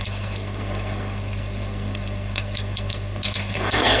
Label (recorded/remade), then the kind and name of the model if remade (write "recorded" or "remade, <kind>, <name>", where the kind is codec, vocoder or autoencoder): remade, codec, SNAC